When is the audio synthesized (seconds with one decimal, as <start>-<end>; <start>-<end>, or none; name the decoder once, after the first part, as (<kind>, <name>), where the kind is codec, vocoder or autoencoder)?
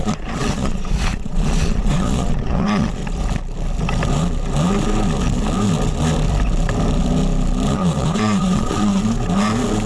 0.0-3.0 (vocoder, Vocos); 7.7-8.9